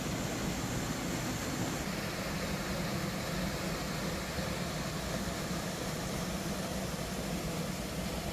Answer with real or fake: real